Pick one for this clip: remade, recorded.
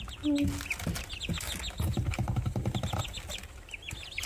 recorded